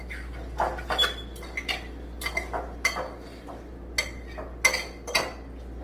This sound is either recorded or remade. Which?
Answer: recorded